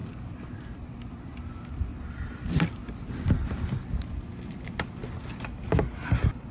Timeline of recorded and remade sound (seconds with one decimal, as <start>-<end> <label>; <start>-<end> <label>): 0.0-0.6 remade; 0.6-1.9 recorded; 1.9-3.9 remade; 3.9-6.5 recorded